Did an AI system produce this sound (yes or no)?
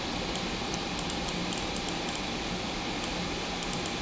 no